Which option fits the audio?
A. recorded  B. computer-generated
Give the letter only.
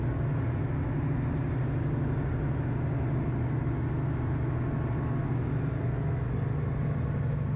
A